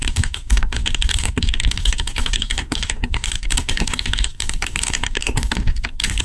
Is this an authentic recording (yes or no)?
no